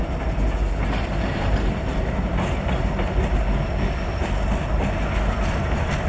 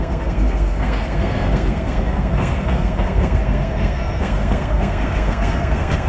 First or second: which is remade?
second